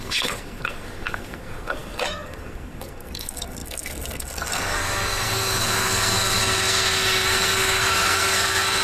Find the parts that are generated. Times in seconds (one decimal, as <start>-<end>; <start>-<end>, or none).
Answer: 0.0-8.8